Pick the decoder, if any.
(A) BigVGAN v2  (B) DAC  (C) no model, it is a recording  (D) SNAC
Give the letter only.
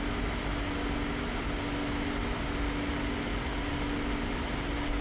C